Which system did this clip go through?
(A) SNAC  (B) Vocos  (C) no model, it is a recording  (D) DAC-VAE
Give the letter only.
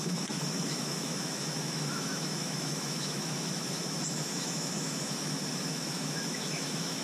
D